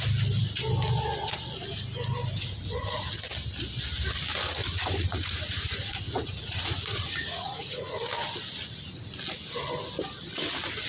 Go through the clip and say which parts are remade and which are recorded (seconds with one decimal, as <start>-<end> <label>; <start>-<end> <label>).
0.0-4.6 recorded; 4.6-8.0 remade; 8.0-10.9 recorded